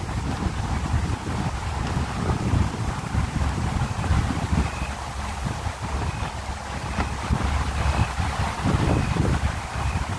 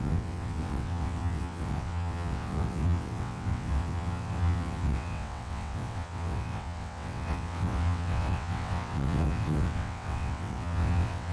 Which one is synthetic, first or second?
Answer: second